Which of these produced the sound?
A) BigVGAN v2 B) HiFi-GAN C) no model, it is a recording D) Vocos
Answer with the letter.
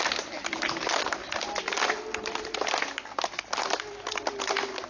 C